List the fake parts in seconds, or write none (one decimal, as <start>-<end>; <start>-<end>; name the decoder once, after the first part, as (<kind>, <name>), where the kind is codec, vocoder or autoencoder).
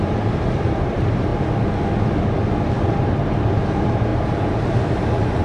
0.0-1.3 (vocoder, BigVGAN v2); 3.0-5.4